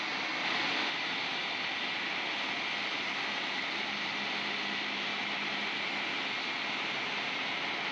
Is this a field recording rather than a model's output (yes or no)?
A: yes